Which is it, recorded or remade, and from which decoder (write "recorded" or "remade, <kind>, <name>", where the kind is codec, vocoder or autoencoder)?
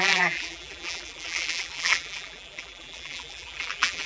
remade, vocoder, BigVGAN v2